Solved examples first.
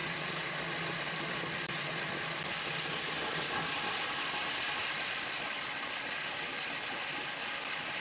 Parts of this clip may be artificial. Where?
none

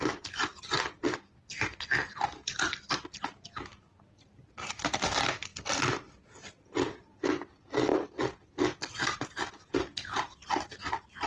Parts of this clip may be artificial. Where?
3.7-4.7 (vocoder, BigVGAN v2)

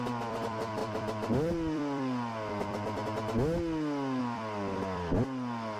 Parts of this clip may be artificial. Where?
0.0-3.0 (vocoder, BigVGAN v2); 4.2-5.8

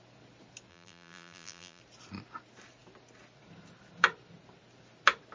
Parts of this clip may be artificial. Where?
0.7-1.8 (vocoder, BigVGAN v2)

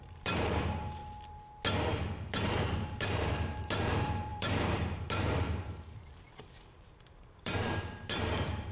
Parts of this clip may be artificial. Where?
0.0-1.0 (vocoder, BigVGAN v2); 1.9-8.7

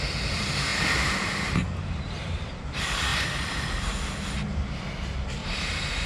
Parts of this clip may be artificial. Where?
0.7-2.1 (vocoder, BigVGAN v2); 3.1-4.8; 5.4-6.1